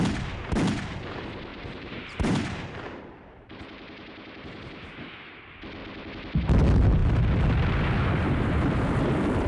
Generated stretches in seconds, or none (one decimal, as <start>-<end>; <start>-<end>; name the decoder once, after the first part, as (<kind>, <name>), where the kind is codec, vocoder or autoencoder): 1.5-5.2 (vocoder, BigVGAN v2)